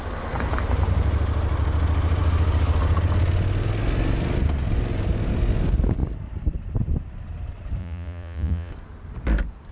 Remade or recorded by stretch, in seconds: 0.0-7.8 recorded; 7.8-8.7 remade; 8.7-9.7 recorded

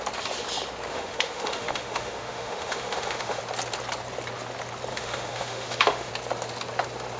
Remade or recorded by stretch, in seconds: 0.0-0.9 recorded; 0.9-3.4 remade; 3.4-4.9 recorded; 4.9-6.1 remade; 6.1-7.2 recorded

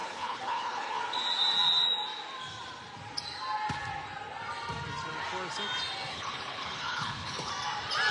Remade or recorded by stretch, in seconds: 0.0-1.0 remade; 1.0-6.1 recorded; 6.1-7.5 remade; 7.5-8.1 recorded